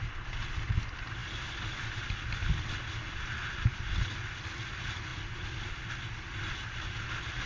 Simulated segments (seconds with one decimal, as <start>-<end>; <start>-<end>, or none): none